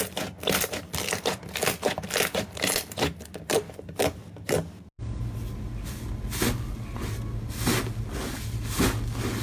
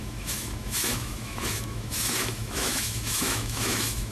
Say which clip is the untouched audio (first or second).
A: first